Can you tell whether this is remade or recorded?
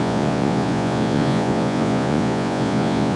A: remade